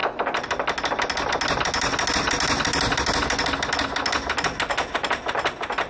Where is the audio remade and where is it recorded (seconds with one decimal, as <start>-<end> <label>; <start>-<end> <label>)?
0.0-5.9 recorded